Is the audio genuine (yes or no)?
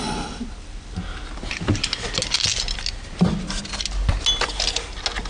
yes